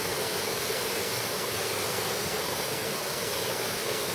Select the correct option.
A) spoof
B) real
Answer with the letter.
A